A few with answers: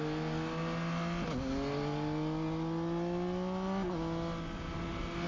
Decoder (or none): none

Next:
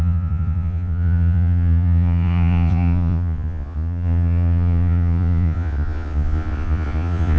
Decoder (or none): vocoder, Vocos